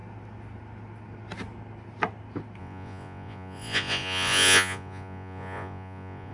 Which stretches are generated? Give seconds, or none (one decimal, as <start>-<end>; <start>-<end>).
2.6-6.3